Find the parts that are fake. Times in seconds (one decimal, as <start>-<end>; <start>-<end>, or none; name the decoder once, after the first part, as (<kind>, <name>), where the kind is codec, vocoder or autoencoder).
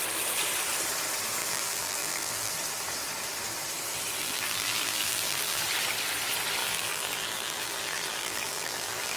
1.4-2.5 (vocoder, BigVGAN v2); 4.2-5.6; 6.6-9.2